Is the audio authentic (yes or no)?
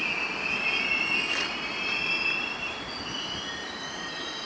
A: yes